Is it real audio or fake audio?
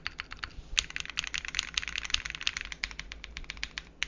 fake